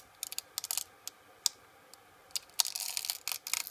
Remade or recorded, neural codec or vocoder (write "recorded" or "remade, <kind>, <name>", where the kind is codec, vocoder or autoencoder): recorded